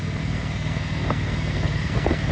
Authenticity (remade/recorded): remade